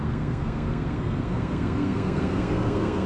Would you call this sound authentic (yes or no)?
no